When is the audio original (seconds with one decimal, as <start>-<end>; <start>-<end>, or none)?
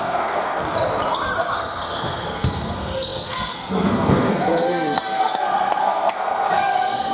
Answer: 0.6-1.4